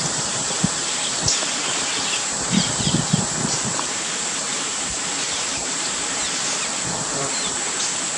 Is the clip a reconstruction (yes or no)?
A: yes